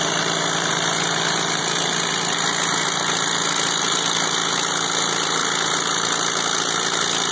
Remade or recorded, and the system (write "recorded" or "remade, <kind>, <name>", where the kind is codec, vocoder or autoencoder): recorded